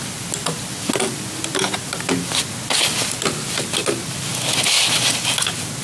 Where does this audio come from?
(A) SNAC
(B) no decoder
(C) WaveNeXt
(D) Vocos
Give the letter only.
B